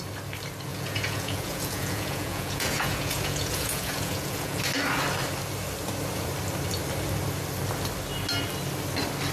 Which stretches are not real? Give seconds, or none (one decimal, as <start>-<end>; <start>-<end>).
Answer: 0.7-4.6